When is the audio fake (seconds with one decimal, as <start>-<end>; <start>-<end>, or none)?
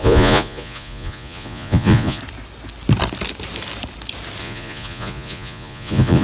0.0-2.2; 4.4-6.2